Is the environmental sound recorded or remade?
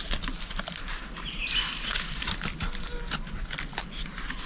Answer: recorded